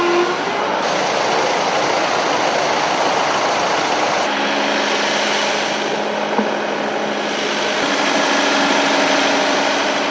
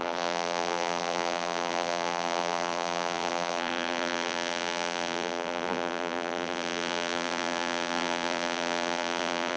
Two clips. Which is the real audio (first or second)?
first